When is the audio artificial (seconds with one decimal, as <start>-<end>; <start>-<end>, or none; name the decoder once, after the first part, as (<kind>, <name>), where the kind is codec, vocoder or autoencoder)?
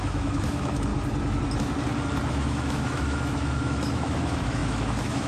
0.0-0.9 (autoencoder, DAC-VAE); 2.3-5.3